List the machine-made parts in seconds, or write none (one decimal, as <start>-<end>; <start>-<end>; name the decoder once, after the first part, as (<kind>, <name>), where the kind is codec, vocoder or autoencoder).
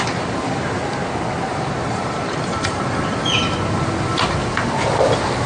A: 1.5-3.3 (vocoder, BigVGAN v2)